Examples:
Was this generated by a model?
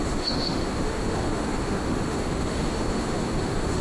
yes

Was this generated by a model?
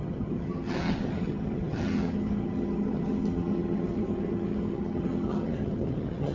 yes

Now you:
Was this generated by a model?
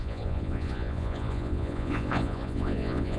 yes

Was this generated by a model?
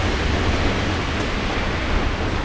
no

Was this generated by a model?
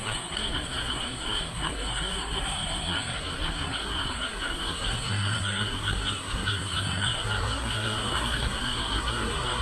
yes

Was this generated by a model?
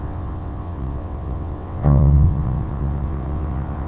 yes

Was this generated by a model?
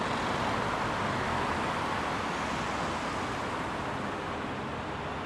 no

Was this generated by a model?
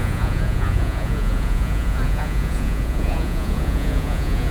yes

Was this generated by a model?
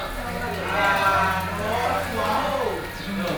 no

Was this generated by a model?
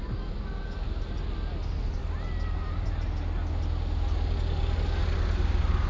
no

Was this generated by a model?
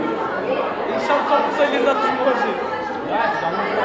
no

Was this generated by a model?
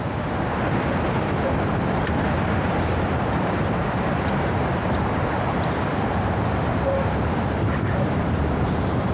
yes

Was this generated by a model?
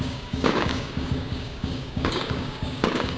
yes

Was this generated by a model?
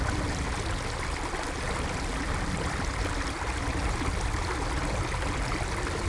no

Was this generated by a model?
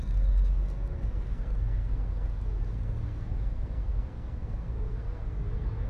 yes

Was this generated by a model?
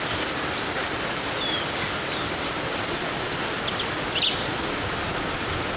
no